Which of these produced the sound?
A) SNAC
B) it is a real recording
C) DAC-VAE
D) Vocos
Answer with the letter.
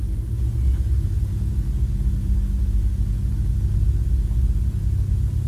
B